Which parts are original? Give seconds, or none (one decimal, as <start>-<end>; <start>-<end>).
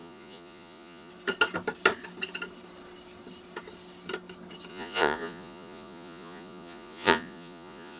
1.1-4.7